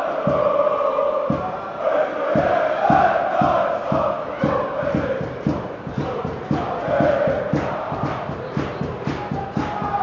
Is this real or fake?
real